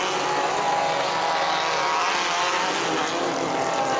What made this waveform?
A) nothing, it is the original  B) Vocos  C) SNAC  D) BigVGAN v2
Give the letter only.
A